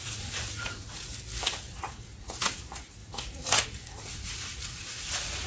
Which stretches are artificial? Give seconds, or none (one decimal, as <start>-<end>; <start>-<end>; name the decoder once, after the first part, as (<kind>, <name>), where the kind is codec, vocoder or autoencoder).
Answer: 0.0-1.1 (vocoder, Vocos); 1.6-5.5